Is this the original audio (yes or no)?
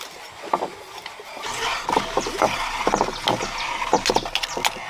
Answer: yes